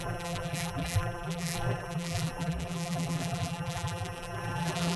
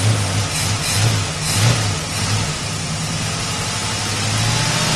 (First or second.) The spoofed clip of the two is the first